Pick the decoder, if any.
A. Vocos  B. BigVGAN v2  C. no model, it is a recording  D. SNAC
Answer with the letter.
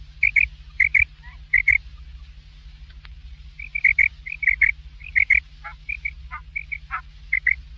C